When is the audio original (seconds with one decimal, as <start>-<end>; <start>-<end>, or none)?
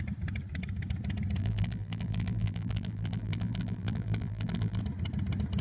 0.0-1.4; 4.8-5.6